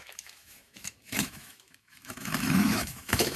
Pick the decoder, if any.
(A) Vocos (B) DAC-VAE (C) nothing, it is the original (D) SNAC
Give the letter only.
B